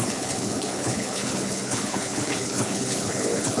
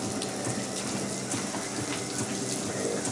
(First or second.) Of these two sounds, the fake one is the first